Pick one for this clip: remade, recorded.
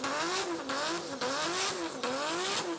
recorded